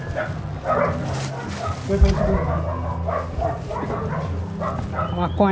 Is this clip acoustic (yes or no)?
yes